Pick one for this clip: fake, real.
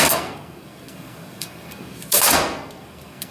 fake